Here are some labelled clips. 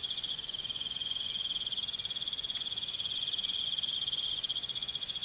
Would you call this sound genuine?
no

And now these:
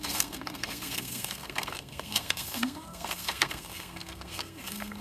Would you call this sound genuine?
no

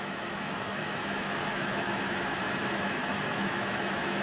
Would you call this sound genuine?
no